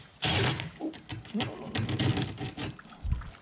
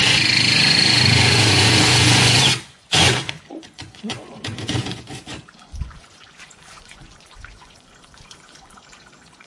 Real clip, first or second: first